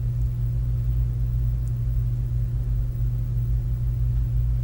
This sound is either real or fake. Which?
real